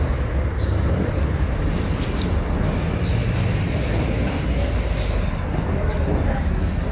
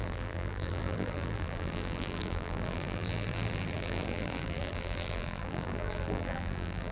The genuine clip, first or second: first